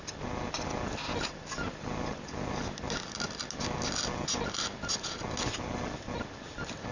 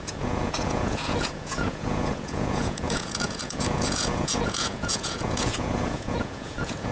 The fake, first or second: second